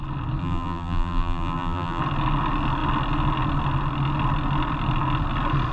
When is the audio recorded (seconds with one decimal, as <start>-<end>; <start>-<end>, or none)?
0.0-0.4; 2.0-5.7